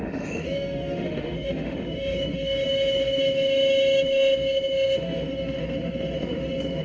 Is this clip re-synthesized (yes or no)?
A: yes